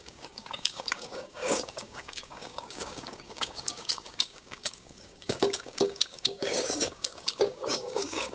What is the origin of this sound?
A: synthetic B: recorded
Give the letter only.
A